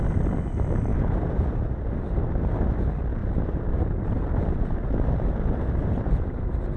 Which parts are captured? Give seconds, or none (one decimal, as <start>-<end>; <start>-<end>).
0.0-0.9; 1.4-3.2